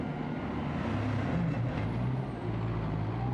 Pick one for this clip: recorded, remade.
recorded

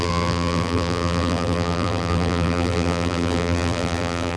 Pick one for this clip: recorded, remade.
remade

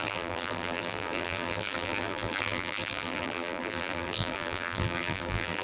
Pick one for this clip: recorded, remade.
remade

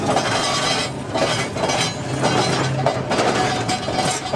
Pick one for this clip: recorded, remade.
recorded